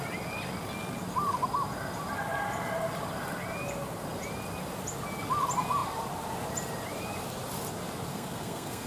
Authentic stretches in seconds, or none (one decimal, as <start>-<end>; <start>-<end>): 0.0-8.1